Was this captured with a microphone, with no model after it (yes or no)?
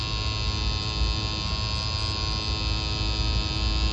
yes